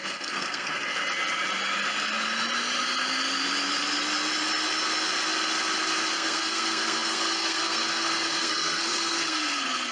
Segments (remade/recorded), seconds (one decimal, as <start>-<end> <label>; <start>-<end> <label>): 0.0-0.9 remade; 0.9-6.1 recorded; 6.1-9.9 remade